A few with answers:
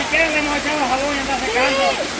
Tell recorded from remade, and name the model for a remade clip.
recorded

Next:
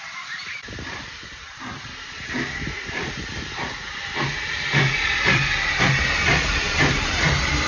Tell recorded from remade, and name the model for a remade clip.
remade, vocoder, BigVGAN v2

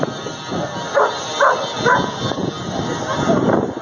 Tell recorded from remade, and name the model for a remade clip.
recorded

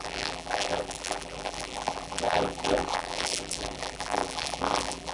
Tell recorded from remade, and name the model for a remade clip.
remade, vocoder, BigVGAN v2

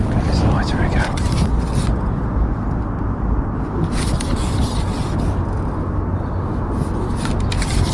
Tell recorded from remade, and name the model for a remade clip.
recorded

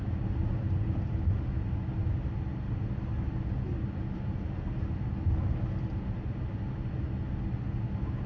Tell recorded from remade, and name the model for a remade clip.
recorded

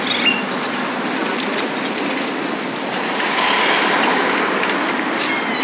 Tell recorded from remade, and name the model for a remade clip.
recorded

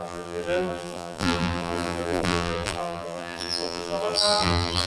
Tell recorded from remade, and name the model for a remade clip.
remade, vocoder, BigVGAN v2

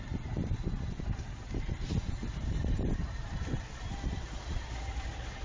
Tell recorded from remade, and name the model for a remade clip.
remade, vocoder, BigVGAN v2